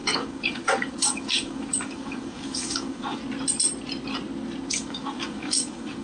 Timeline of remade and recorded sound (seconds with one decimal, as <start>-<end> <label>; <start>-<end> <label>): 0.0-3.2 remade; 3.2-4.7 recorded; 4.7-6.0 remade